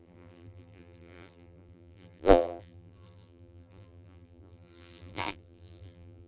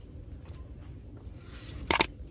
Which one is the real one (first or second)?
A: second